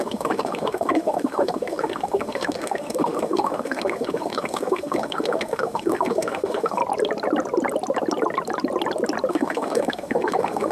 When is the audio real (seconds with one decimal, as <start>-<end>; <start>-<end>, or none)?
6.8-9.3